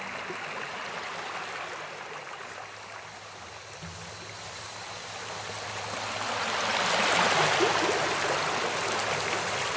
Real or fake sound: real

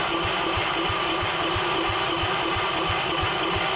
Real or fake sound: real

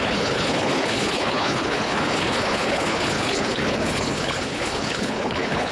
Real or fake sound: fake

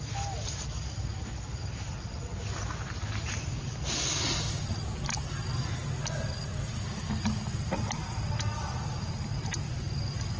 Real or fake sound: real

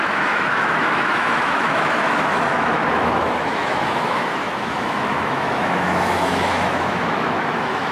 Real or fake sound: fake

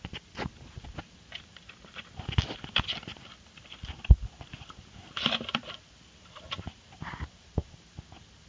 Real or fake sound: fake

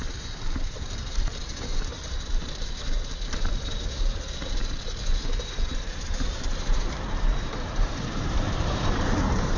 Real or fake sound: fake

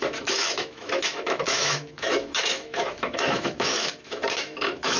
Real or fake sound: fake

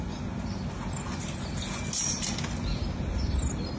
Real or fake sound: real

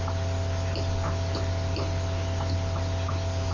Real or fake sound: real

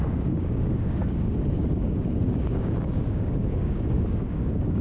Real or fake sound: fake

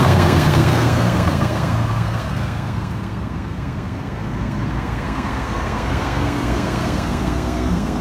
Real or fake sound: fake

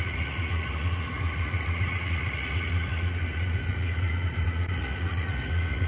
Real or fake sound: fake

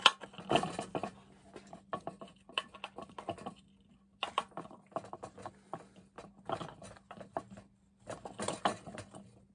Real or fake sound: real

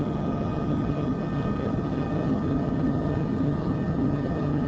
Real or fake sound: fake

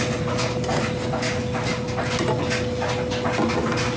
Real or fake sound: real